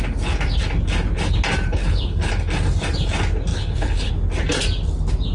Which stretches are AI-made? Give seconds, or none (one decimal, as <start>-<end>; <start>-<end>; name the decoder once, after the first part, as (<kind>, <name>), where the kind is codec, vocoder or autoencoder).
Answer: 1.8-2.3 (codec, HILCodec); 3.5-4.1